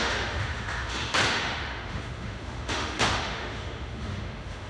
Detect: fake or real fake